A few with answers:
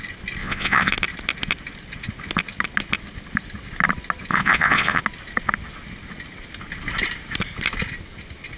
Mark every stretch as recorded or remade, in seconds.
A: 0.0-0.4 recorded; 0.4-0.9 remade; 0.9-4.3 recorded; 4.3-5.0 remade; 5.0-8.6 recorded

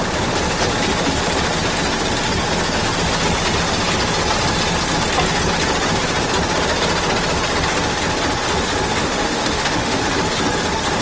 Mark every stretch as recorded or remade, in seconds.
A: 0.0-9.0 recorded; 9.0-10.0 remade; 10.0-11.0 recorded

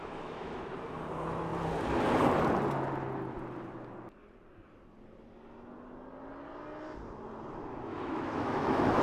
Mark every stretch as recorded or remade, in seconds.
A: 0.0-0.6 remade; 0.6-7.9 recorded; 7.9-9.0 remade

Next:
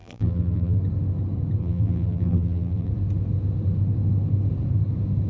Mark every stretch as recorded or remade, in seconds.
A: 0.0-0.8 remade; 0.8-1.6 recorded; 1.6-2.9 remade; 2.9-5.3 recorded